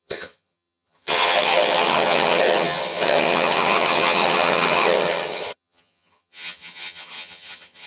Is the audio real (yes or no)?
no